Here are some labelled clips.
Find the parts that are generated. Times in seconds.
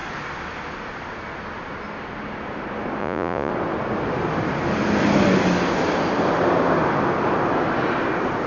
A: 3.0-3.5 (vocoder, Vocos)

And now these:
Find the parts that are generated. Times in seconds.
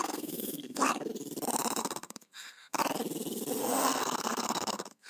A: 0.0-1.1 (codec, SNAC); 1.8-2.8; 3.6-5.1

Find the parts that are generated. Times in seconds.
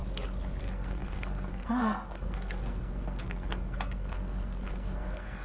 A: 0.6-5.4 (codec, SNAC)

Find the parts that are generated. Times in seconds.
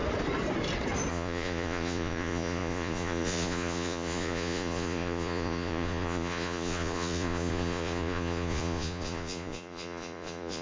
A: 1.1-10.6 (vocoder, Vocos)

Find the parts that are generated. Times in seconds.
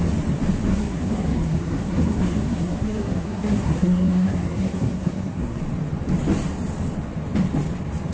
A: 0.7-5.6 (codec, SNAC)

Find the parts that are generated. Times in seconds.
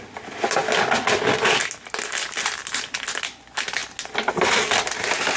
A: none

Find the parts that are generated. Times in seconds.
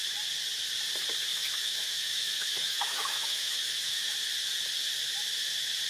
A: 1.3-4.1 (autoencoder, DAC-VAE)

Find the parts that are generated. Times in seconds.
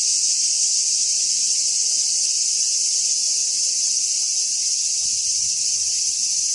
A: none